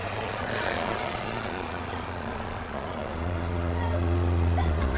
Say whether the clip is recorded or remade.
remade